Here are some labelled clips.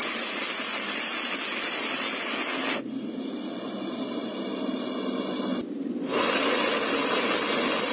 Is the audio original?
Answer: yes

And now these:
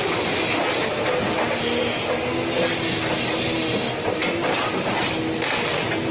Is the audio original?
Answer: yes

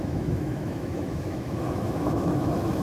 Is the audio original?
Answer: no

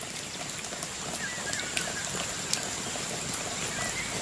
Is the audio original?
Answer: yes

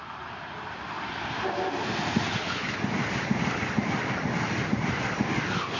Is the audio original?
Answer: yes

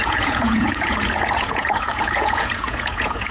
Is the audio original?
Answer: no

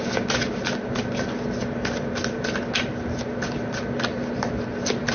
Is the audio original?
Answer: yes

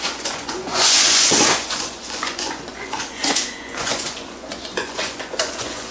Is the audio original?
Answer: no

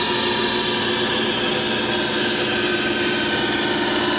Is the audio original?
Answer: yes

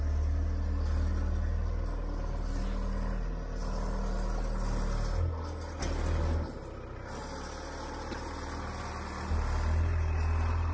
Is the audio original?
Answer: yes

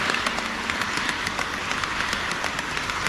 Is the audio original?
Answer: no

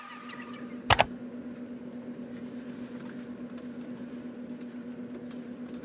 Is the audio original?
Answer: yes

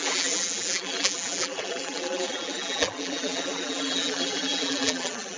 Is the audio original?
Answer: no